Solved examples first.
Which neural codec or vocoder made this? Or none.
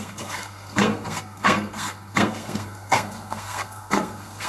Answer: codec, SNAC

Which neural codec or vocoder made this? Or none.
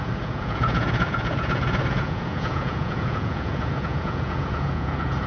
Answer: vocoder, Vocos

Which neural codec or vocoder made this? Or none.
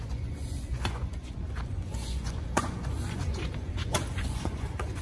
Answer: vocoder, Vocos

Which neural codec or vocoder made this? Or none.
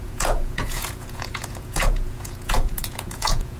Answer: vocoder, Vocos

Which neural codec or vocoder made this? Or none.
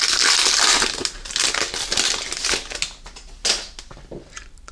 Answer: none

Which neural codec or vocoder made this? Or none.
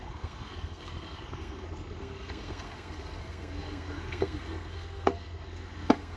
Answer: codec, SNAC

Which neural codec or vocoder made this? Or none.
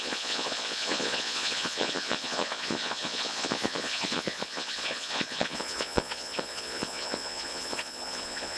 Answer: vocoder, Vocos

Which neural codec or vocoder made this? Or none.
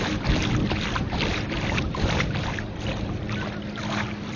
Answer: none